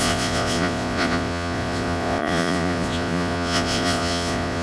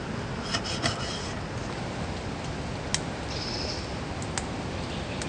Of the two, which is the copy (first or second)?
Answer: first